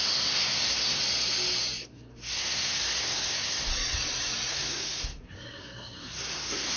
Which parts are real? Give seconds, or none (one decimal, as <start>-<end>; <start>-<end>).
1.0-1.8; 3.7-4.5